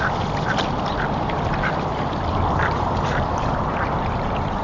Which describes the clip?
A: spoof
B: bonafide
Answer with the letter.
B